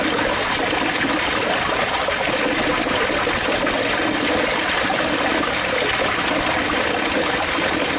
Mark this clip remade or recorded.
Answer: recorded